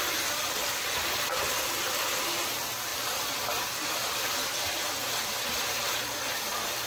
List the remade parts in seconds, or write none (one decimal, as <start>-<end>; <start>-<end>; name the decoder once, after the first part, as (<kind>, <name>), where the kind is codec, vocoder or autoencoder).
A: none